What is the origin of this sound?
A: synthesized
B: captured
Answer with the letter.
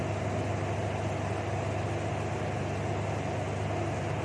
B